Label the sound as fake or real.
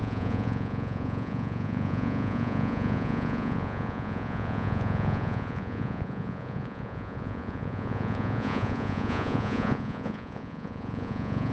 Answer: fake